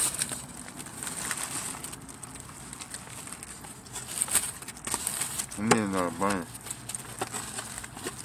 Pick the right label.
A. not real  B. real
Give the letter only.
B